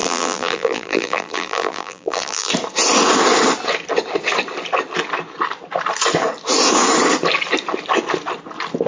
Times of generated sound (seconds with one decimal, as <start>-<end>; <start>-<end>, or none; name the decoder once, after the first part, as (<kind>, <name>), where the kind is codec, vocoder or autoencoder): 0.0-2.5 (vocoder, BigVGAN v2)